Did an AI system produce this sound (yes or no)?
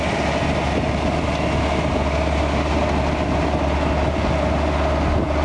no